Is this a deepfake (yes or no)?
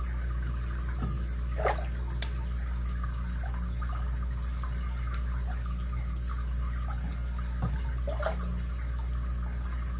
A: no